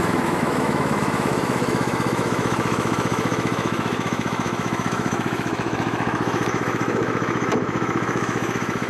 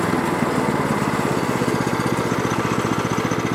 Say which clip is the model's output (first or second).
first